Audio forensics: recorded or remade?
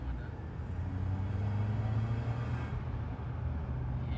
recorded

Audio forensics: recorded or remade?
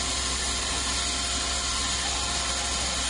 recorded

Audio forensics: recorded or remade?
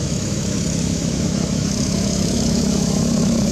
remade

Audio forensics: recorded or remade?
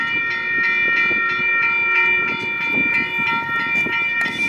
recorded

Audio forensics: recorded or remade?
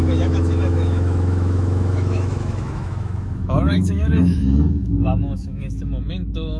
remade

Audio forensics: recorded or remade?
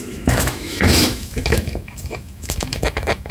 remade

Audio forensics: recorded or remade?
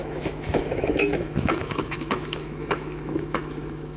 remade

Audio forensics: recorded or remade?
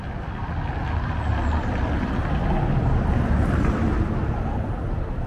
recorded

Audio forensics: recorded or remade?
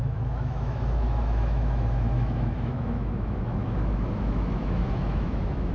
remade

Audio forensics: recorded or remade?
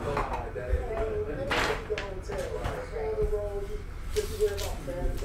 recorded